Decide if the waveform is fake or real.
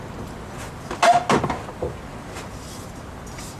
real